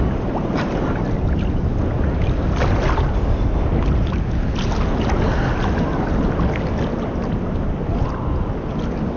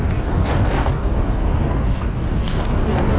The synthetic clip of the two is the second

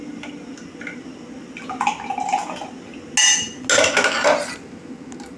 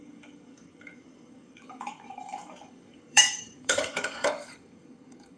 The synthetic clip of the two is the second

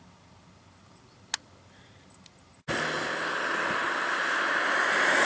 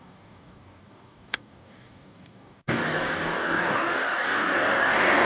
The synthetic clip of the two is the second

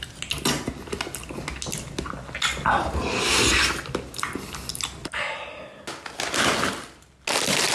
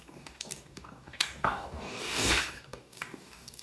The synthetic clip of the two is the second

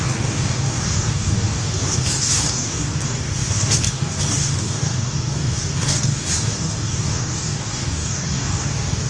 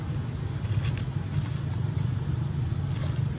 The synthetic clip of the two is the first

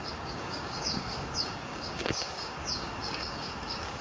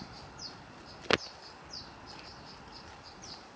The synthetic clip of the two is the first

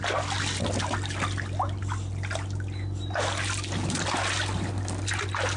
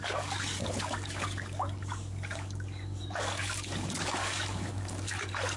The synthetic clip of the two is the second